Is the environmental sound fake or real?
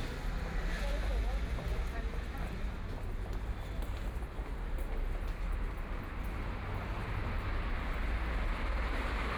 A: real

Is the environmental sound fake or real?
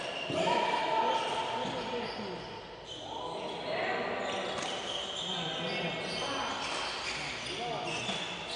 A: real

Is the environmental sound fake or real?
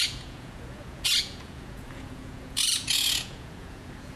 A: fake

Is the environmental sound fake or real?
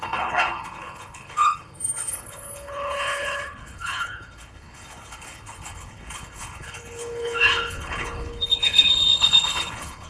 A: fake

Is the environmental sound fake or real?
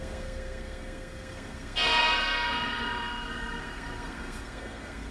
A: fake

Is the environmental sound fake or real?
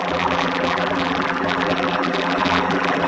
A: fake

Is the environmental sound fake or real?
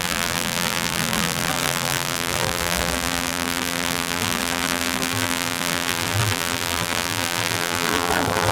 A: fake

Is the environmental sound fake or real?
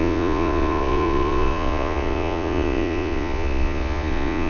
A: fake